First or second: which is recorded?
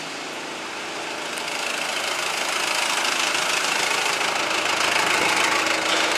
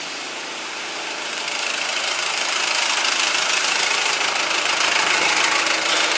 first